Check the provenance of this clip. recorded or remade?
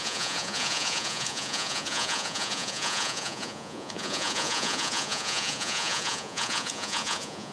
remade